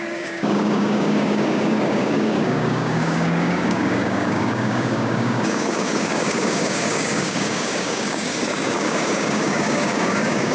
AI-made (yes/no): yes